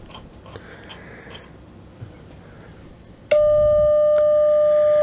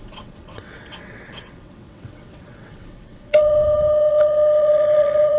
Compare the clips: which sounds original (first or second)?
first